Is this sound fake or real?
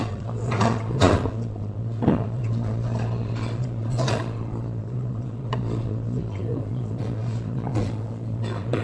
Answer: fake